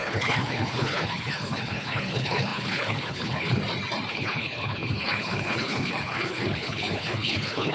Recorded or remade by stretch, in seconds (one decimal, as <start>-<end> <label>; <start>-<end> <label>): 0.0-3.6 remade; 3.6-4.1 recorded; 4.1-7.7 remade